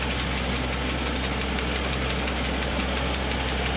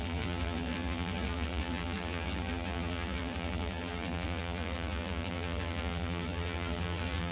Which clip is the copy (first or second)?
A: second